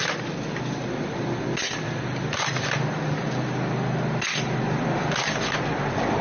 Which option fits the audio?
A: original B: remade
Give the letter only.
B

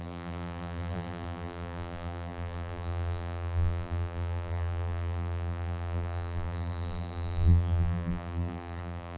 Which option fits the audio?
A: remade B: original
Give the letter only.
A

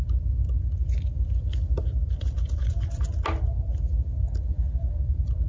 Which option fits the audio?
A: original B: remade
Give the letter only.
A